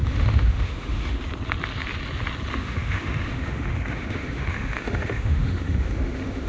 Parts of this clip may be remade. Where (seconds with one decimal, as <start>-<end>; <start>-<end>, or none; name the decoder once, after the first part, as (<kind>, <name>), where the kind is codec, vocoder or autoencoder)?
0.0-1.2 (autoencoder, DAC-VAE); 2.5-6.5